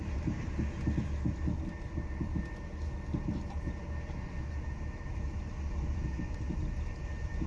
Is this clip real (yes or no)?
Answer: yes